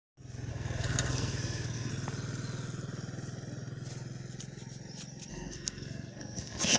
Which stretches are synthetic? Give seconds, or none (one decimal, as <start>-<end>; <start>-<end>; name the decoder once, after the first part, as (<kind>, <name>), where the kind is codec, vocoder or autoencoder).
0.5-1.9 (codec, SNAC); 5.3-6.8